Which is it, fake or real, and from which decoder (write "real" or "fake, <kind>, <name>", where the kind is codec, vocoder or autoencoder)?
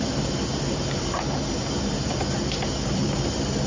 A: real